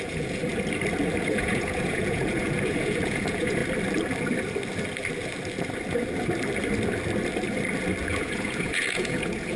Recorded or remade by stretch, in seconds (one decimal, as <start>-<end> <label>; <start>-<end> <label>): 0.0-0.4 remade; 0.4-1.2 recorded; 1.2-3.6 remade; 3.6-8.0 recorded; 8.0-9.6 remade